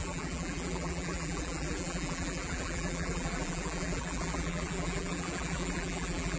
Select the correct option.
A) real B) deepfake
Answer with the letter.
B